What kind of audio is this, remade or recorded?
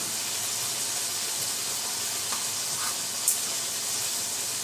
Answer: recorded